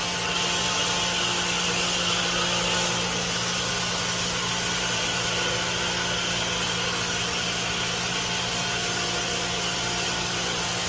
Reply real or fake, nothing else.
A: real